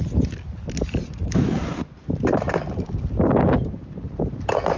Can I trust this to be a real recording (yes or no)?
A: yes